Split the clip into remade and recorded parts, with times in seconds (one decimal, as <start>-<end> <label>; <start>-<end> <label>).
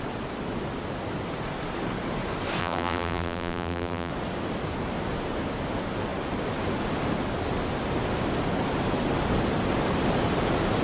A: 0.0-2.6 recorded; 2.6-4.1 remade; 4.1-10.8 recorded